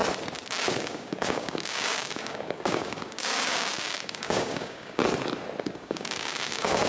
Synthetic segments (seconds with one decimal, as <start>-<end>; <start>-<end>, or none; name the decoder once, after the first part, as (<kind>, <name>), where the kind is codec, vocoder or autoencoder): 0.5-5.0 (codec, DAC); 5.6-6.9